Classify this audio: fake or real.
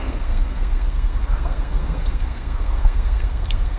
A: fake